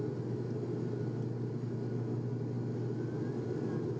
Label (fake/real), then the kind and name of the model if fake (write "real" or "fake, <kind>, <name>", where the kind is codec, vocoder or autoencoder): real